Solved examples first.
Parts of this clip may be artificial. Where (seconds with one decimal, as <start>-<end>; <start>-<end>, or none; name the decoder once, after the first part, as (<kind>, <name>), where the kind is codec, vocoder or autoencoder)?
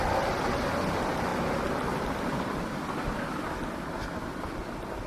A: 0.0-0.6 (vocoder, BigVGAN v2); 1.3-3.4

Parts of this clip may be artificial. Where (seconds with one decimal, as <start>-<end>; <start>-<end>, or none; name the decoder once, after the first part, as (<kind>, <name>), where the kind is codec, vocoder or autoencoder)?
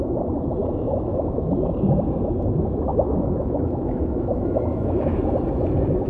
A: 0.6-1.7 (autoencoder, DAC-VAE); 2.9-5.2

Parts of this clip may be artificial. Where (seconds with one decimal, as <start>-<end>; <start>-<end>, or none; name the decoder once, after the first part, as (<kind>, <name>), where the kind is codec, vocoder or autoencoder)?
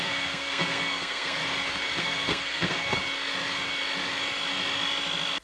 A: 0.0-1.4 (codec, SNAC); 2.0-3.0